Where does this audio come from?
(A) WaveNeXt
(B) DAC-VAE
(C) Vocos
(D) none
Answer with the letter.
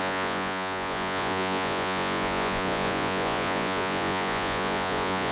C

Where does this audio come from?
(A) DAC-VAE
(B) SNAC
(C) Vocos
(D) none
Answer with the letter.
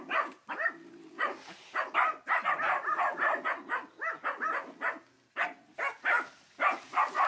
D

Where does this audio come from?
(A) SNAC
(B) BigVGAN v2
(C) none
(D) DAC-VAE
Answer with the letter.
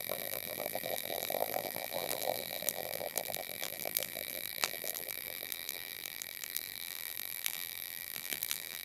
B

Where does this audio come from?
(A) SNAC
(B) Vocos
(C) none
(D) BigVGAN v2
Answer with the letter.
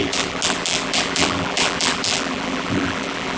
D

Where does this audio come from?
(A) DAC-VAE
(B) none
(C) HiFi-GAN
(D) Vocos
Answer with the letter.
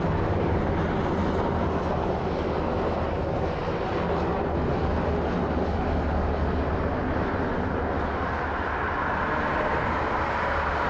B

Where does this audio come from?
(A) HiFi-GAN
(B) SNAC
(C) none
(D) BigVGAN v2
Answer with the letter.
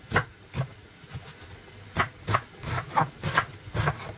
C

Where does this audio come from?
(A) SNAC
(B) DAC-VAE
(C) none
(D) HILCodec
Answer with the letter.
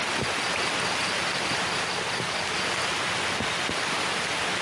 C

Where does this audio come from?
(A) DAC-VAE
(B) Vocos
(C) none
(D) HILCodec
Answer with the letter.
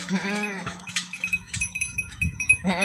A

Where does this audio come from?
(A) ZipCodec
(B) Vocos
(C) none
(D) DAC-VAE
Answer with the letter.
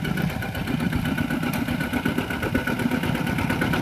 C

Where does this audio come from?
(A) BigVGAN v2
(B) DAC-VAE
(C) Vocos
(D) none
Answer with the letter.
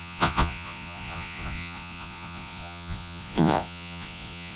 C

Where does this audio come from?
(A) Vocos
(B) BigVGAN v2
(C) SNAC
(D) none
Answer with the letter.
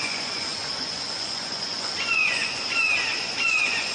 A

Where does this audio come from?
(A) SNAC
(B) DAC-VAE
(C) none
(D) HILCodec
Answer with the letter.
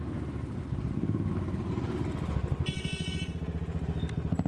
C